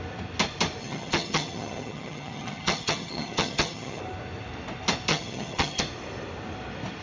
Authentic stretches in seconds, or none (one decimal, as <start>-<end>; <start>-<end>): 0.0-0.8; 4.0-5.1; 5.8-7.0